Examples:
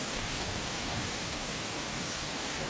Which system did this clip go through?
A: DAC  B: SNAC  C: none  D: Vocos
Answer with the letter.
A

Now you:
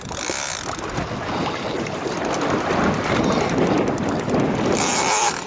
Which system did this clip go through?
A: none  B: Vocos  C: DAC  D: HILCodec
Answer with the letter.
A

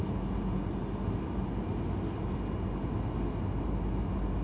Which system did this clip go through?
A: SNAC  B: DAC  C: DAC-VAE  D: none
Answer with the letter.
D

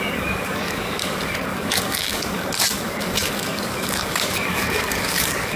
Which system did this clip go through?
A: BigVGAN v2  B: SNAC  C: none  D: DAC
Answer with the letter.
D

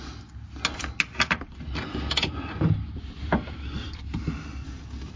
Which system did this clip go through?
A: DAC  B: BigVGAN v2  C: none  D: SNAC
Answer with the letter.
C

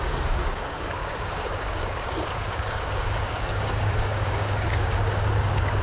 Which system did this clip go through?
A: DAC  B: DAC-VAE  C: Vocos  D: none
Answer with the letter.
A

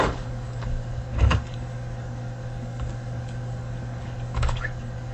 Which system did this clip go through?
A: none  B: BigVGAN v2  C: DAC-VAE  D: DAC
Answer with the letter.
D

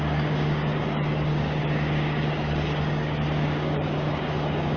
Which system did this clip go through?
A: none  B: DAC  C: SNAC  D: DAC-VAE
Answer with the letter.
B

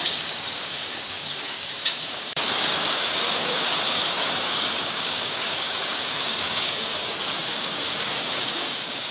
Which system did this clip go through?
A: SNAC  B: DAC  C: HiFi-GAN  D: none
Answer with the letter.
B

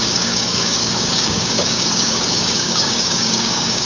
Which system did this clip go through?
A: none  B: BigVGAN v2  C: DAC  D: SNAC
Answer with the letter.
C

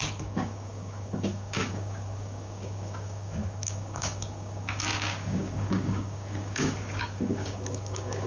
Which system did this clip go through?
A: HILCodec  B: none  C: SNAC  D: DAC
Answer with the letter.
D